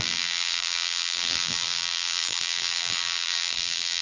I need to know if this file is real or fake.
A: fake